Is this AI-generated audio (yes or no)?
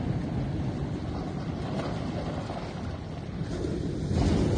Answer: no